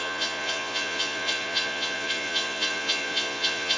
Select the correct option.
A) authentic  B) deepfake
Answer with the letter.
B